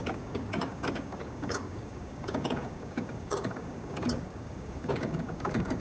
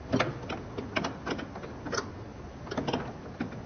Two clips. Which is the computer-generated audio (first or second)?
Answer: first